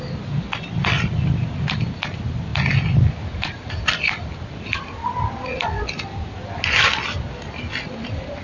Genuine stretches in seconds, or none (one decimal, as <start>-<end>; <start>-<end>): 0.0-8.4